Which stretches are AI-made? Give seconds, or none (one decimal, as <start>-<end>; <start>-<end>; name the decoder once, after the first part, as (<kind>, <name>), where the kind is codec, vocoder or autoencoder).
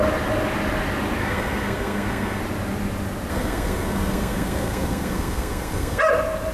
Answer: 1.2-2.4 (codec, SNAC); 3.3-6.0